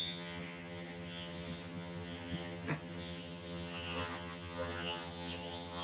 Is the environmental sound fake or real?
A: fake